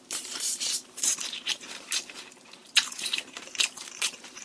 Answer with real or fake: fake